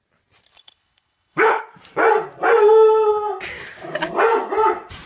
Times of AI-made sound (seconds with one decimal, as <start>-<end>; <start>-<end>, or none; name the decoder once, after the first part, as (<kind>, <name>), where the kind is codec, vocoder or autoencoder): 0.5-1.6 (codec, HILCodec)